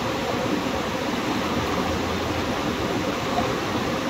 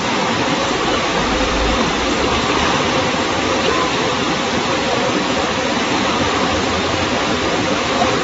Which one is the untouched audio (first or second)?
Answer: first